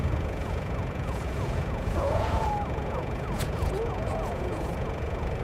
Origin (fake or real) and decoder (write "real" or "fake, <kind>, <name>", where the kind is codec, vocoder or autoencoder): fake, vocoder, Vocos